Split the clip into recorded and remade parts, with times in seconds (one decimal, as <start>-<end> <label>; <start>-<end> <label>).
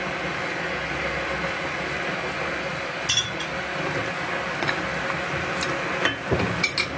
0.0-7.0 recorded